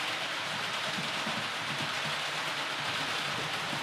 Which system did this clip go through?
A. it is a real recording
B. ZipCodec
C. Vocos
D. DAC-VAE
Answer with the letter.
A